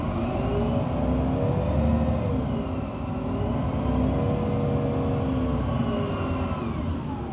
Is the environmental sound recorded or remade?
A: recorded